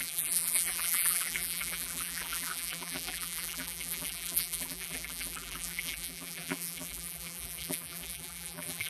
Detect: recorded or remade remade